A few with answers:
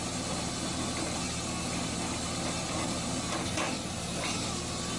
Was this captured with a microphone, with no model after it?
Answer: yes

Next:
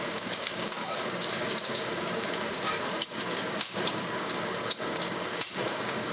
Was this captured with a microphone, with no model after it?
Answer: no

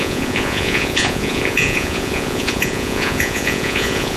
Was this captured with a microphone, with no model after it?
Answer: no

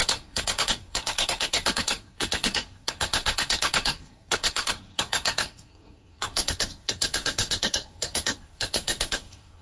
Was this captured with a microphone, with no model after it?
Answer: no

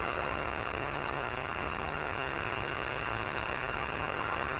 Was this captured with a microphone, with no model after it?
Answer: no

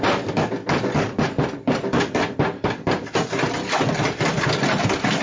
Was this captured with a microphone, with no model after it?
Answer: yes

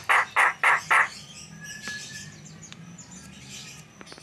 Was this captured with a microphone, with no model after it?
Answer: yes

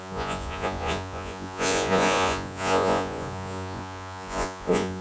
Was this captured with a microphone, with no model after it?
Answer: no